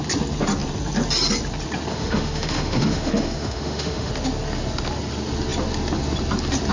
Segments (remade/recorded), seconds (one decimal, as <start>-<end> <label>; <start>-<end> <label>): 0.0-1.9 recorded; 1.9-4.1 remade; 4.1-6.7 recorded